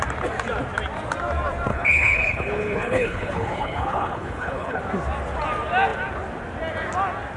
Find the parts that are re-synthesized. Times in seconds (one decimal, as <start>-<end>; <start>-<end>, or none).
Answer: 1.7-4.8